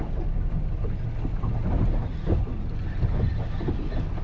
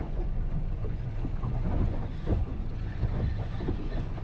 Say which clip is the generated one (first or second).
second